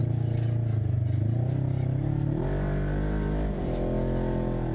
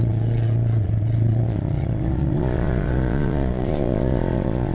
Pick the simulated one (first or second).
second